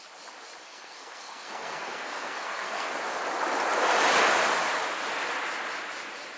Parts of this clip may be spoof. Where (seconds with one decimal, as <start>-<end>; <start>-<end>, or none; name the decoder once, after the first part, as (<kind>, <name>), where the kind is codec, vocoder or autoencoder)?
0.6-2.9 (codec, SNAC)